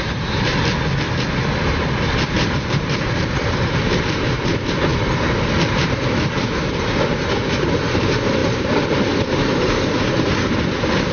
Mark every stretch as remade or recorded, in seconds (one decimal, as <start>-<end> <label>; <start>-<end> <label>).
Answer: 0.0-0.5 remade; 0.5-2.3 recorded; 2.3-4.9 remade; 4.9-5.7 recorded; 5.7-11.1 remade